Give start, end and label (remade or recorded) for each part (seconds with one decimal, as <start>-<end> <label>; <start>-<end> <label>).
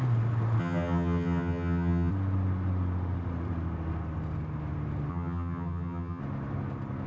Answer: 0.0-0.6 recorded; 0.6-2.1 remade; 2.1-5.1 recorded; 5.1-6.2 remade; 6.2-7.1 recorded